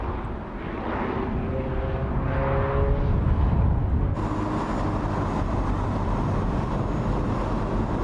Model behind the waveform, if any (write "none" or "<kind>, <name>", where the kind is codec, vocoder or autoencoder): none